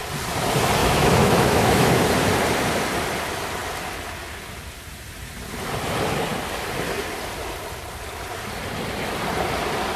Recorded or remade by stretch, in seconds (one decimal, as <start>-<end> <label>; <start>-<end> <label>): 0.0-0.8 recorded; 0.8-2.0 remade; 2.0-10.0 recorded